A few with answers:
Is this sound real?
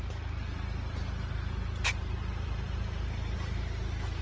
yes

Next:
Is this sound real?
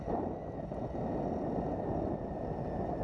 yes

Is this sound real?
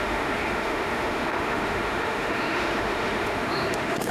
no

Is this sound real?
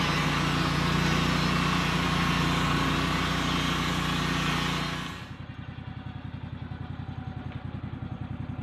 yes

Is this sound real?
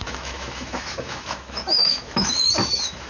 no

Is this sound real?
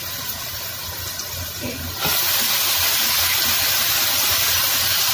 yes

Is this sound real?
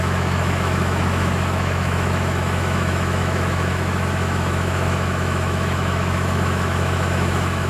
no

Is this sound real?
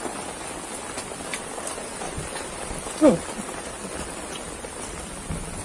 yes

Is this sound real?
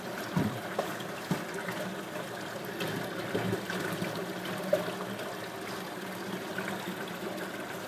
yes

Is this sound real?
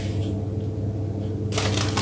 yes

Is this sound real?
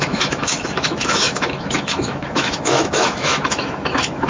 no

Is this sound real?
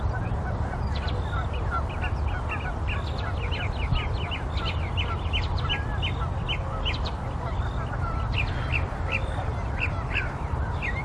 yes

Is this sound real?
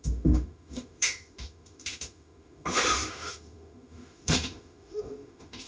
no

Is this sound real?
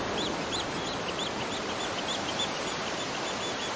yes